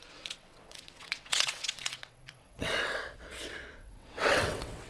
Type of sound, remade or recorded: remade